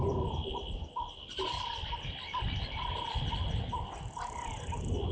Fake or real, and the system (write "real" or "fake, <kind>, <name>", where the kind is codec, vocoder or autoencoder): real